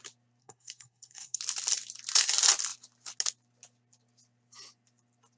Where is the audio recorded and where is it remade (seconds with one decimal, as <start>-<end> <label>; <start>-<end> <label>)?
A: 0.0-0.4 recorded; 0.4-1.4 remade; 1.4-5.4 recorded